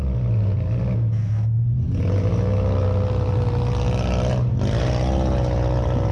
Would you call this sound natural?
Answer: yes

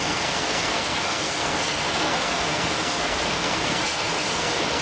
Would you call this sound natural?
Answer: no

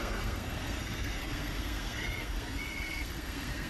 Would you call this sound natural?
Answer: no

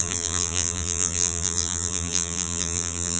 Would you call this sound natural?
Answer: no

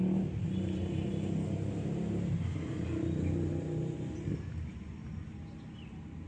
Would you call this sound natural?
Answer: yes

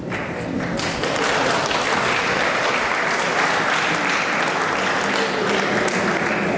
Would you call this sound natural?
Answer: yes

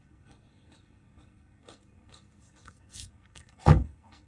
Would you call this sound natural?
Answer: no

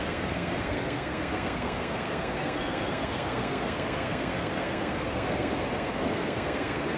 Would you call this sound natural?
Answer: no